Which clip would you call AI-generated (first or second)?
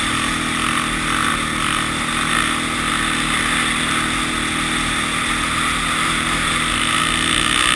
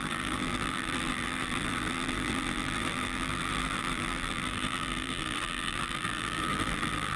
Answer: second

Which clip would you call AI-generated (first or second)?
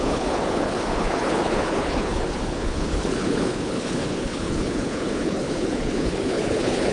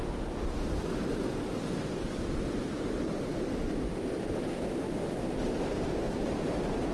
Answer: first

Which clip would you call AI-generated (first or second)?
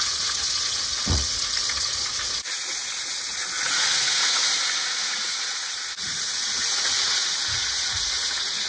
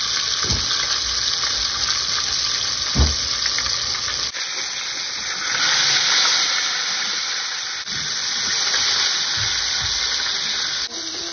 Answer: first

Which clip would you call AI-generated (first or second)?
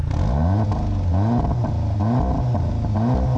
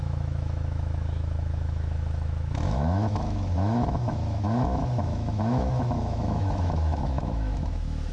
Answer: second